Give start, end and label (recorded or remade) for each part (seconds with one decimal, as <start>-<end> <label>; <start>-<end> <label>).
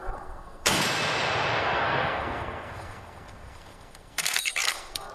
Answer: 0.0-0.8 remade; 0.8-1.6 recorded; 1.6-5.1 remade